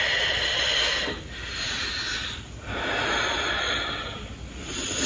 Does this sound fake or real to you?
real